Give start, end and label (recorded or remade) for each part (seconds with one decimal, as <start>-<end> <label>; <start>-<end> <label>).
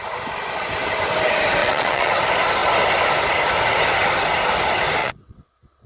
0.0-1.6 recorded; 1.6-2.2 remade; 2.2-5.0 recorded; 5.0-5.9 remade